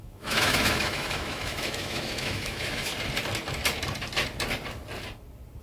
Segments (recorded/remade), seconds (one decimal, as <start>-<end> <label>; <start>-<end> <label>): 0.0-2.9 remade; 2.9-5.6 recorded